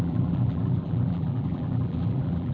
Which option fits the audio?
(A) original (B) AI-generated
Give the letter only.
B